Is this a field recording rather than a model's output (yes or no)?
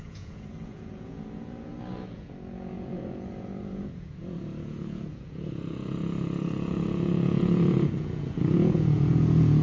no